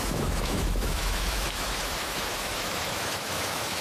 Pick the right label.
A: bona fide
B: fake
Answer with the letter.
B